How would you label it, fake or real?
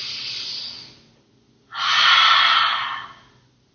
real